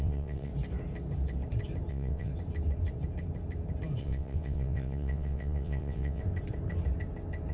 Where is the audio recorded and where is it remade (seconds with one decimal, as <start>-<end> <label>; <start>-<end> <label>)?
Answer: 0.0-0.5 remade; 0.5-1.9 recorded; 1.9-2.3 remade; 2.3-4.0 recorded; 4.0-6.2 remade; 6.2-7.5 recorded